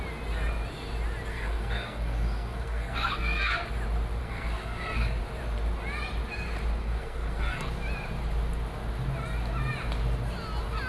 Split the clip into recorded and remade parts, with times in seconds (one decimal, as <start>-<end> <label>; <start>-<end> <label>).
0.0-1.3 recorded; 1.3-3.7 remade; 3.7-4.2 recorded; 4.2-5.2 remade; 5.2-6.8 recorded; 6.8-7.7 remade; 7.7-10.9 recorded